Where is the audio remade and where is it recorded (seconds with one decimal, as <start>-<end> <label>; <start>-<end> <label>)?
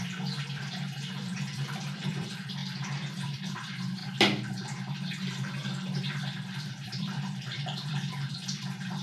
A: 0.0-4.0 remade; 4.0-6.7 recorded; 6.7-9.0 remade